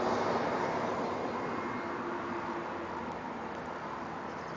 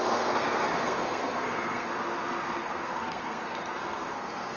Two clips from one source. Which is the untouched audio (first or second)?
first